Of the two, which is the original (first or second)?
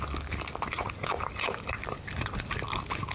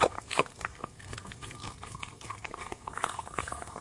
first